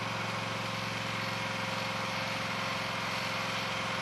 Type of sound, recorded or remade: recorded